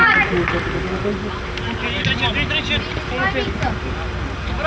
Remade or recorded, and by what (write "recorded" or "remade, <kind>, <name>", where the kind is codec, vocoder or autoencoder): recorded